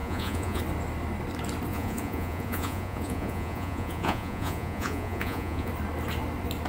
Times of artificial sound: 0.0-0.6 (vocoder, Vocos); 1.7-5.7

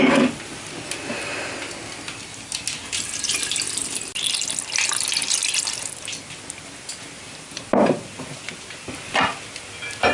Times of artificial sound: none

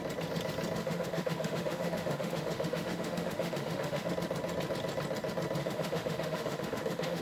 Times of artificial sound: 0.8-4.1 (autoencoder, DAC-VAE); 5.6-7.2